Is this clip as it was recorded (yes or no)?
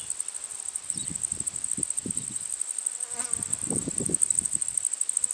yes